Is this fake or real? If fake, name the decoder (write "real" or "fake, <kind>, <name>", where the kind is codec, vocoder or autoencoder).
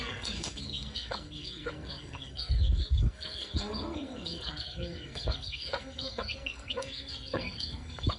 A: fake, codec, SNAC